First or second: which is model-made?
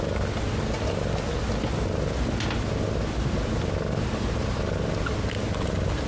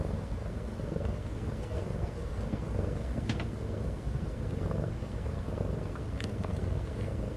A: second